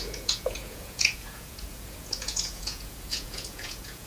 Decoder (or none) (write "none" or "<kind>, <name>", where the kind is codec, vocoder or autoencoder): vocoder, Vocos